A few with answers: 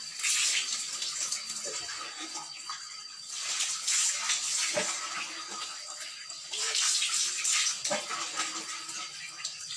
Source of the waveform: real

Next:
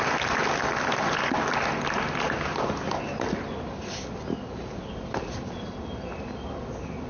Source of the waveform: real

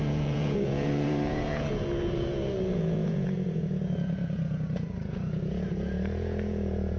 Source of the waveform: fake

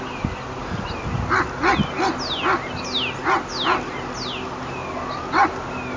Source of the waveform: real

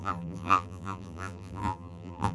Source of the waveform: fake